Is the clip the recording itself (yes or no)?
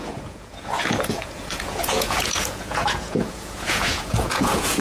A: no